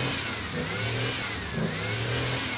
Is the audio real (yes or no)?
yes